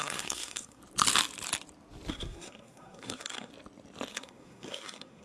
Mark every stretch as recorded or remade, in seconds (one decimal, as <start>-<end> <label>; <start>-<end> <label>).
0.0-0.8 remade; 0.8-2.1 recorded; 2.1-3.5 remade; 3.5-4.1 recorded; 4.1-5.2 remade

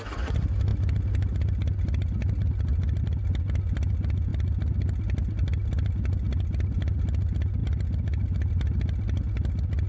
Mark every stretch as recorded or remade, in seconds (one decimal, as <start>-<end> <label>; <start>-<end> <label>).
0.0-9.9 recorded

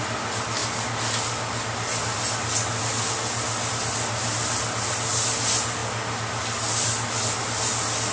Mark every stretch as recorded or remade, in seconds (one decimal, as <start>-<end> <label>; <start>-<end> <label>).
0.0-8.1 recorded

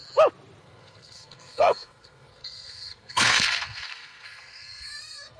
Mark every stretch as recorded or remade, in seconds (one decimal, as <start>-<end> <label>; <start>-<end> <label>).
0.0-0.6 recorded; 0.6-5.4 remade

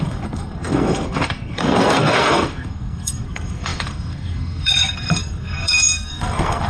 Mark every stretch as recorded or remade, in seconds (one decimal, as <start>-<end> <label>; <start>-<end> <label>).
0.0-6.7 remade

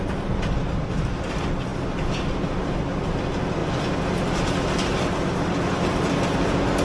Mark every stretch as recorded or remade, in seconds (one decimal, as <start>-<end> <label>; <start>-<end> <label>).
0.0-6.8 recorded

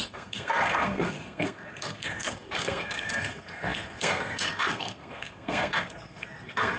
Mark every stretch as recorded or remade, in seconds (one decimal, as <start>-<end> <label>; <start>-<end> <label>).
0.0-6.8 remade

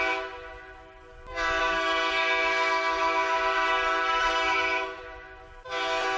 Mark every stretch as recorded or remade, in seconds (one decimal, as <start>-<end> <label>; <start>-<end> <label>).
0.0-1.6 recorded; 1.6-5.0 remade; 5.0-6.2 recorded